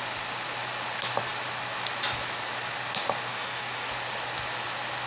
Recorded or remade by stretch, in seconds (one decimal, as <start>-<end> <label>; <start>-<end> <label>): 0.0-3.3 recorded; 3.3-3.9 remade; 3.9-5.1 recorded